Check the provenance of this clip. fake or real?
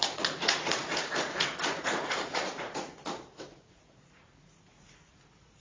fake